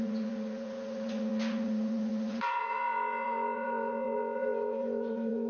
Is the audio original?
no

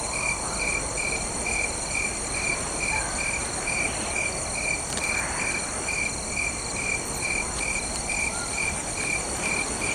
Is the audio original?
yes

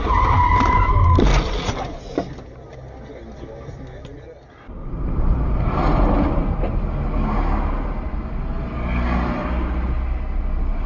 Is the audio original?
yes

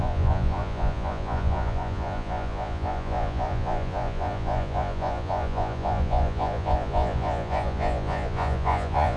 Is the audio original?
no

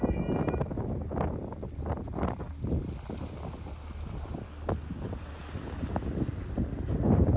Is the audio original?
yes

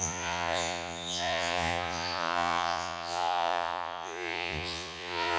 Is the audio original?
no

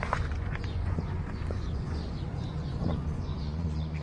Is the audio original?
no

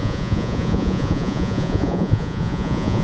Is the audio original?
no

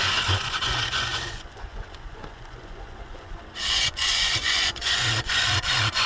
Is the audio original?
no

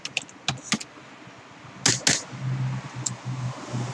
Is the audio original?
yes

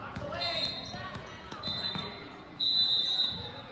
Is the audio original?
no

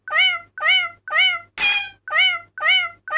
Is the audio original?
yes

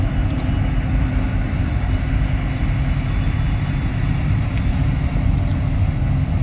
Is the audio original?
yes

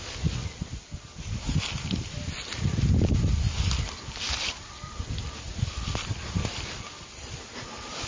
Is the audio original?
yes